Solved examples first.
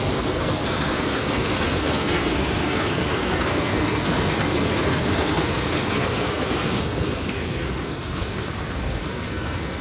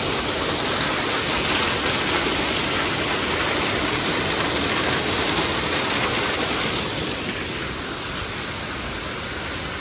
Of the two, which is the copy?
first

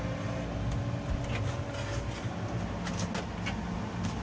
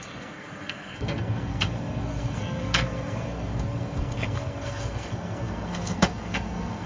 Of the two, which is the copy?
second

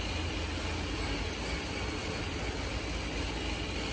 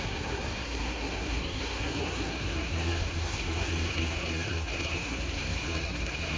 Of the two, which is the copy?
second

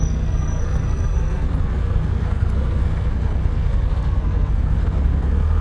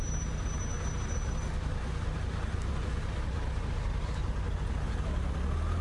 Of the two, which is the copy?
first